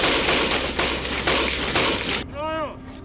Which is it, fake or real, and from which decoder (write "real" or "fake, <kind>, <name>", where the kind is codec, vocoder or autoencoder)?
real